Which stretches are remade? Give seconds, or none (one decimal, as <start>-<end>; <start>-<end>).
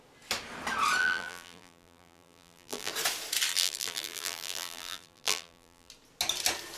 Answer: 1.0-2.9; 3.5-5.9